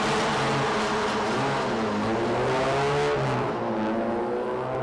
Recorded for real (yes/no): yes